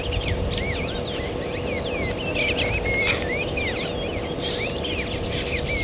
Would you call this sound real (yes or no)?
yes